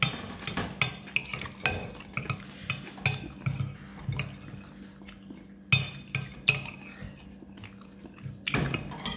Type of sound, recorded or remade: recorded